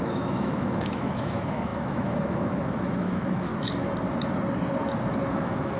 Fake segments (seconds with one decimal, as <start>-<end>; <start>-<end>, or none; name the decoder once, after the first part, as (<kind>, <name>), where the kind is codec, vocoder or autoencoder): 0.0-3.5 (autoencoder, DAC-VAE); 5.3-5.8